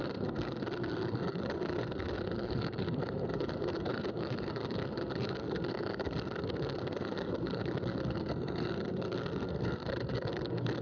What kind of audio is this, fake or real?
fake